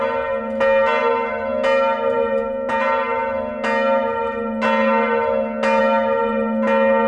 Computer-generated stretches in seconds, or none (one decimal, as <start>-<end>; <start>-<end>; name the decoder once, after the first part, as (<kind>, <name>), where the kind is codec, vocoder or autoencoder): none